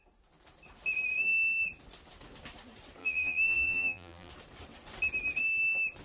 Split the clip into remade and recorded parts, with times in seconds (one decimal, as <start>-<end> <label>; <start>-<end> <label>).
0.0-3.0 recorded; 3.0-4.3 remade; 4.3-6.0 recorded